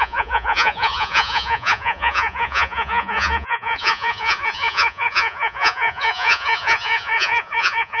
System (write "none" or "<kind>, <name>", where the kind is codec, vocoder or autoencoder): vocoder, Vocos